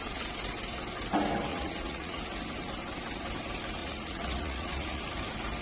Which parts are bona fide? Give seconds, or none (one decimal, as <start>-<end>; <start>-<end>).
0.0-1.5; 2.2-3.8; 5.0-5.6